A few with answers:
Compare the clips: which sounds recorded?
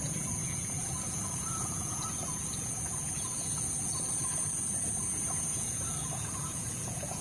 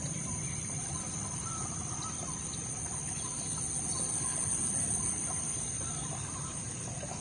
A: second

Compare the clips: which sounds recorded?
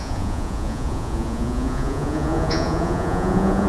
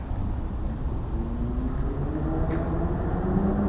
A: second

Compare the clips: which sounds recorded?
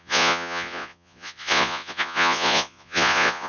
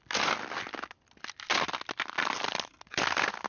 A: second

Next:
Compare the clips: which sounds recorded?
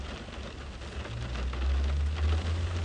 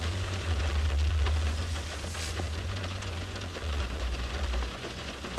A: first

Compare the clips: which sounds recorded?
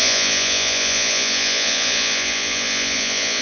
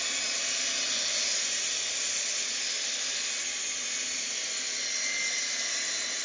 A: second